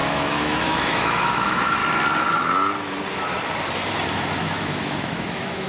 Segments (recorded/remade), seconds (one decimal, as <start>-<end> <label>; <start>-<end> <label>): 0.0-1.8 remade; 1.8-4.4 recorded; 4.4-5.7 remade